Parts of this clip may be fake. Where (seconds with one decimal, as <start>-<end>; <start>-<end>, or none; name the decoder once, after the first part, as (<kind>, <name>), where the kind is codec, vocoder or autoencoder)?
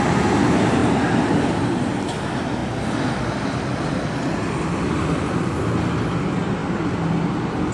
0.8-1.9 (vocoder, BigVGAN v2); 2.6-5.5; 6.6-7.7